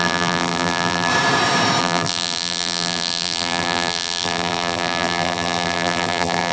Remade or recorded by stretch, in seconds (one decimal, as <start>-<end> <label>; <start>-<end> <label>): 0.0-1.1 remade; 1.1-1.8 recorded; 1.8-6.5 remade